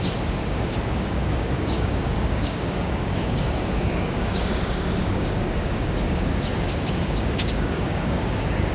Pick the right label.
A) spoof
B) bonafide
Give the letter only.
A